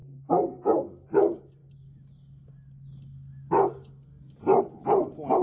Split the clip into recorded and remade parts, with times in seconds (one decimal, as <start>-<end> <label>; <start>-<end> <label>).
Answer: 0.0-1.1 remade; 1.1-5.4 recorded